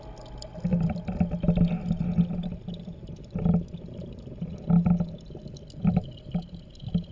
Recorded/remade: recorded